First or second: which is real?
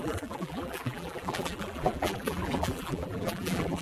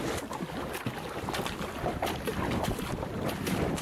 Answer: second